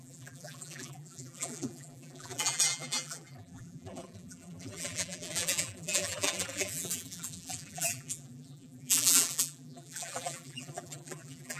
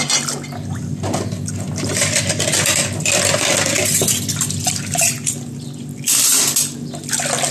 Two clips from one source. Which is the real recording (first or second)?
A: second